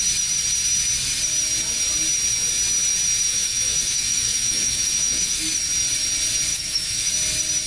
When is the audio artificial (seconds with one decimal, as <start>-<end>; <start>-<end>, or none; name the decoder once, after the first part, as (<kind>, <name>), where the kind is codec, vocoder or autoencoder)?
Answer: 3.3-5.4 (autoencoder, DAC-VAE); 6.5-7.1